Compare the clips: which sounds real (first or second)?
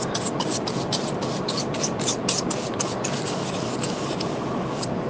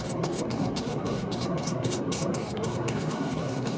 first